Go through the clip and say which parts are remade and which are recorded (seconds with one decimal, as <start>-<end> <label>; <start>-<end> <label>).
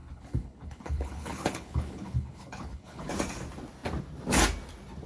0.0-3.1 remade; 3.1-5.1 recorded